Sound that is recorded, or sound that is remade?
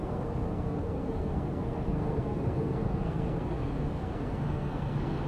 remade